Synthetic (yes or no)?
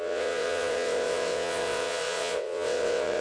yes